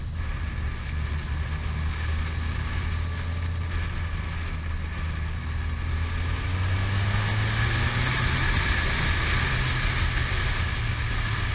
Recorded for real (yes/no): yes